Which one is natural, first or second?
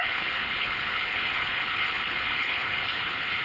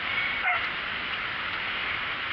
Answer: second